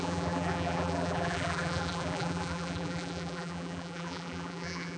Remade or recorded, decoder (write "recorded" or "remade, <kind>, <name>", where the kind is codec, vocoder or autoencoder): remade, vocoder, BigVGAN v2